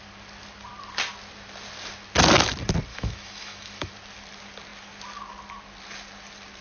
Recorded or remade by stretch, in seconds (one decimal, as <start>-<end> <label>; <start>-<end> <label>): 0.0-2.9 recorded; 2.9-3.9 remade; 3.9-6.6 recorded